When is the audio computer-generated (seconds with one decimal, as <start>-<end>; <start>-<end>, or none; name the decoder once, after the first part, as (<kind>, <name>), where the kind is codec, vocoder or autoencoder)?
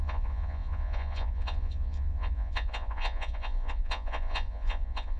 0.0-5.2 (vocoder, Vocos)